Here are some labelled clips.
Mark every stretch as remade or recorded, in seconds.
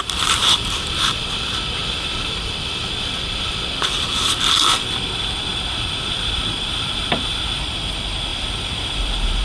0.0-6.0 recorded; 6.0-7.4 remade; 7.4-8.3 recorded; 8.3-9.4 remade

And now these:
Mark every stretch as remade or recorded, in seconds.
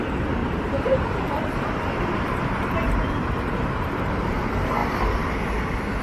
0.0-0.4 recorded; 0.4-4.0 remade; 4.0-6.0 recorded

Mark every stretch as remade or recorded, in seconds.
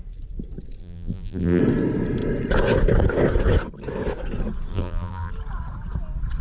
0.0-0.8 recorded; 0.8-1.6 remade; 1.6-4.7 recorded; 4.7-5.3 remade; 5.3-6.4 recorded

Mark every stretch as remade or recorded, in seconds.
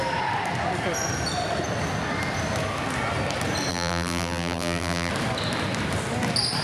0.0-3.7 recorded; 3.7-5.1 remade; 5.1-6.6 recorded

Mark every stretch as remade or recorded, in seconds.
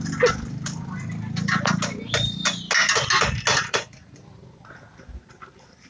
0.0-3.5 recorded; 3.5-4.7 remade; 4.7-5.9 recorded